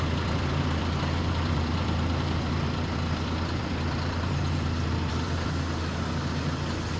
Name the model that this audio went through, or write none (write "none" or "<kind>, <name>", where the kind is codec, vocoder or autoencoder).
vocoder, BigVGAN v2